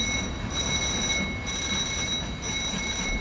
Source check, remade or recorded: recorded